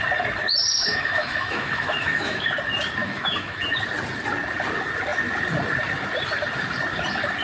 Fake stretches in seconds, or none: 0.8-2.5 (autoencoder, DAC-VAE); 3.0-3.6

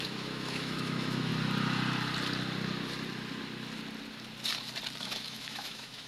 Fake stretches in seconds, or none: 0.0-1.3 (autoencoder, DAC-VAE); 5.0-6.1